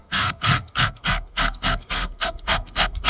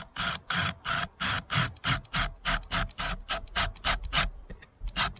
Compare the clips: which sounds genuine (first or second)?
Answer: second